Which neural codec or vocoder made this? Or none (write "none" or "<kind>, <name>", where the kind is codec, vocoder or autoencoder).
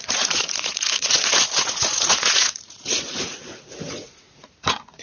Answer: vocoder, Vocos